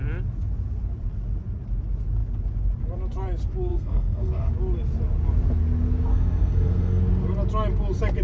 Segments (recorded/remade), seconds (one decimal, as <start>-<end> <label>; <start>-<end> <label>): 0.0-3.7 recorded; 3.7-4.5 remade; 4.5-6.1 recorded; 6.1-7.0 remade; 7.0-8.2 recorded